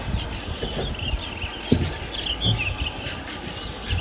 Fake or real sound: real